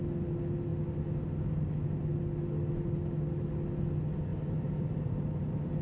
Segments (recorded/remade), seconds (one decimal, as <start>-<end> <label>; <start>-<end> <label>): 0.0-4.3 recorded; 4.3-5.8 remade